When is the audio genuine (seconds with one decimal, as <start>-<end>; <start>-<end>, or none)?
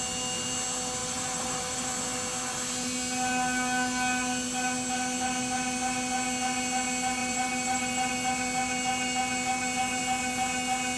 0.0-1.0; 1.9-7.2; 8.1-11.0